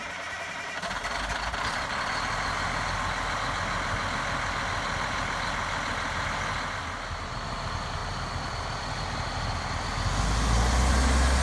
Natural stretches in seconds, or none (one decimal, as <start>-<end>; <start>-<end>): 0.0-11.4